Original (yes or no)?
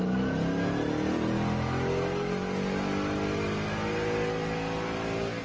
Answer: yes